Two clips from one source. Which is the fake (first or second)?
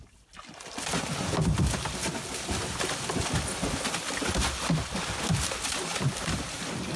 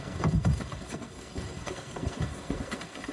second